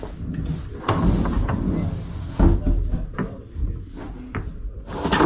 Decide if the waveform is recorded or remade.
recorded